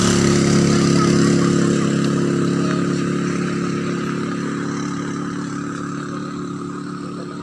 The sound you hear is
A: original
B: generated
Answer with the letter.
A